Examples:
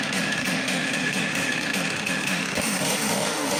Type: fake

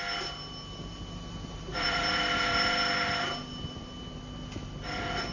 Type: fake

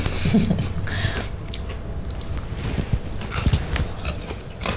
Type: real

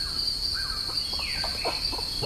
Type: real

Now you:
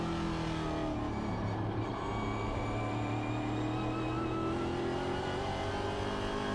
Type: real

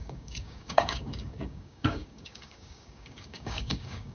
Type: fake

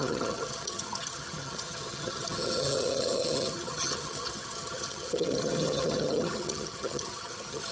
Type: fake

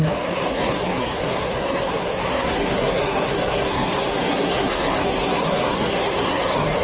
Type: fake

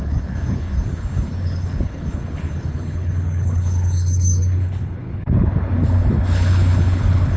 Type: fake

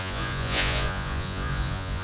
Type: fake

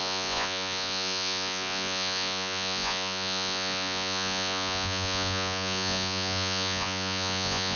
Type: fake